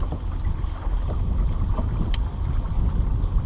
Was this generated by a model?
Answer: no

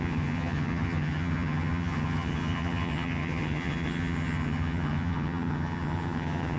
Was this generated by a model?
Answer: yes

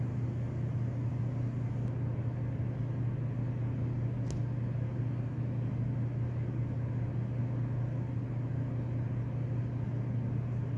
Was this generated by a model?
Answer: no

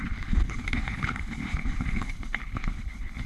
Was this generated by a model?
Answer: yes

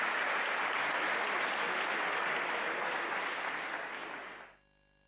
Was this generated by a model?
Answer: no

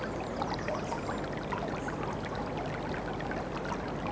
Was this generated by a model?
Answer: no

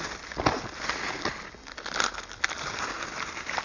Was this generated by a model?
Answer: no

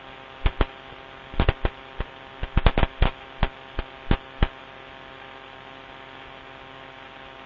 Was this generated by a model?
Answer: no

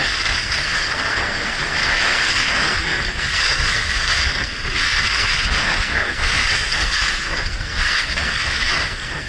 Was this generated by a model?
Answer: yes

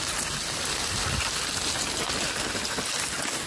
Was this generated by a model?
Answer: no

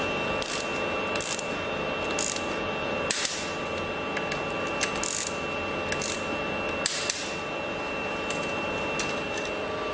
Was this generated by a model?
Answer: no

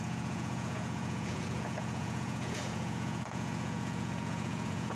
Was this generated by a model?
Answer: yes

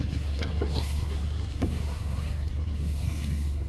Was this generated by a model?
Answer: yes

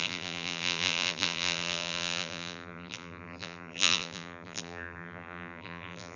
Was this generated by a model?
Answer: yes